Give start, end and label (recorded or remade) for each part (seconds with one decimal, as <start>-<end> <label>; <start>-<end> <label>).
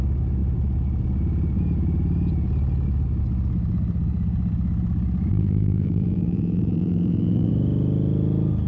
0.0-5.3 recorded; 5.3-7.5 remade; 7.5-8.7 recorded